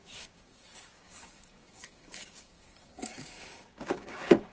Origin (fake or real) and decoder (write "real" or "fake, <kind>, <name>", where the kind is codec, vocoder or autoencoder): fake, codec, DAC